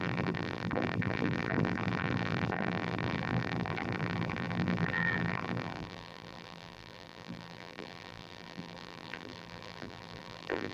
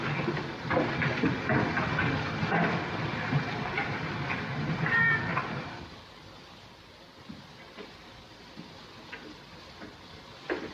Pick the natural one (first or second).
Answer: second